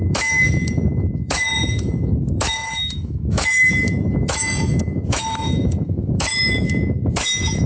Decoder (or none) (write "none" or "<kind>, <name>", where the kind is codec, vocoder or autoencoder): autoencoder, DAC-VAE